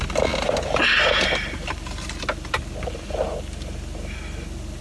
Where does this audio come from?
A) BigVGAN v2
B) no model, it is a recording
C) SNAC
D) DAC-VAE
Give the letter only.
B